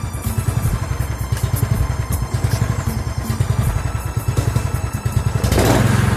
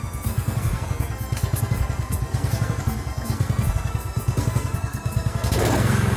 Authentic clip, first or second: first